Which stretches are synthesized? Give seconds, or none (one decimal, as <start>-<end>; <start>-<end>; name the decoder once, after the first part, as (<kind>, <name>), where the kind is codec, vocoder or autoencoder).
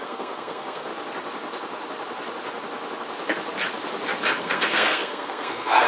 0.0-0.9 (codec, SNAC); 4.4-5.9